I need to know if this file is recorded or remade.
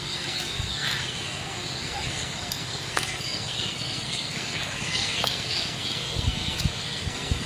remade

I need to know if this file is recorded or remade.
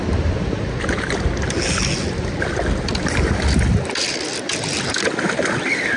recorded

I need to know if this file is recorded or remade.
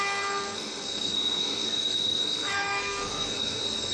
remade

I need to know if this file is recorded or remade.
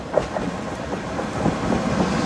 recorded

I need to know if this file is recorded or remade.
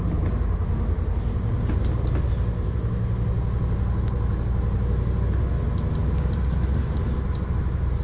recorded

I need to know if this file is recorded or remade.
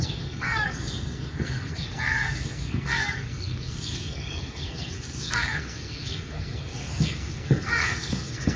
remade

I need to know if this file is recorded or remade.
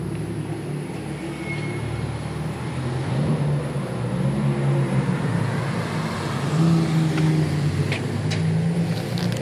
recorded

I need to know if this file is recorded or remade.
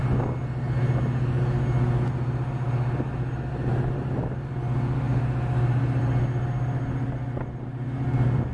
recorded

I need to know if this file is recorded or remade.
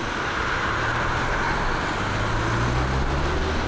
recorded